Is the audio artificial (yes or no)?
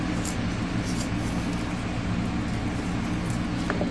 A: no